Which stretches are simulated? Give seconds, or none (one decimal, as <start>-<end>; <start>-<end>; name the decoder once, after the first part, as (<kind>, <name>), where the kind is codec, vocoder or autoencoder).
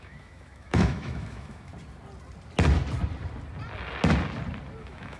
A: 0.0-1.7 (autoencoder, DAC-VAE); 4.8-5.2